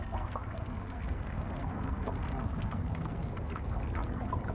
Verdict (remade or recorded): remade